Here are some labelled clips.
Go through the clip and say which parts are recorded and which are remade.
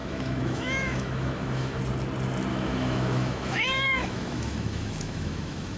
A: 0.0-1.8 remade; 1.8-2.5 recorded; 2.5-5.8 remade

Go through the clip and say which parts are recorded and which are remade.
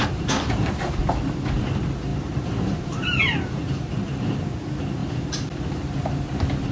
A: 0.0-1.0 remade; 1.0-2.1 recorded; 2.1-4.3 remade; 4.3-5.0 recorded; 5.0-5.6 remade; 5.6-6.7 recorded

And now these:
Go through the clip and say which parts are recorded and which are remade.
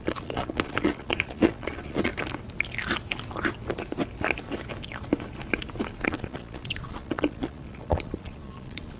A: 0.0-2.1 remade; 2.1-6.0 recorded; 6.0-9.0 remade